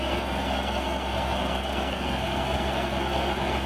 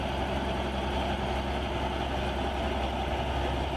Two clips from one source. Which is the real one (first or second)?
second